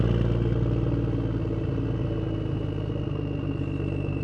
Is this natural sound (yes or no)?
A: yes